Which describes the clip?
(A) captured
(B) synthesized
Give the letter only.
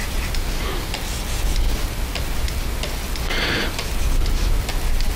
A